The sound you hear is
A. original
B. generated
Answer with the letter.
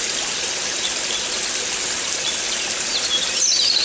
A